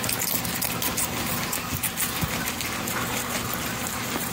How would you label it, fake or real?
real